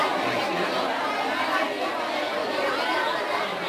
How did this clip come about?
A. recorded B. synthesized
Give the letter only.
A